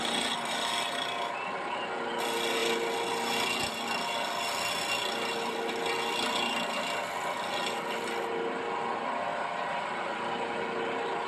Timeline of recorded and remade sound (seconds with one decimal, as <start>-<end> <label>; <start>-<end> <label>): 0.0-11.3 recorded